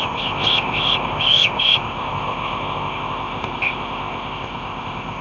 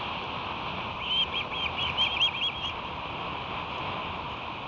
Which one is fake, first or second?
first